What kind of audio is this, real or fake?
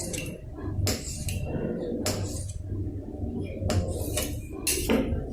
real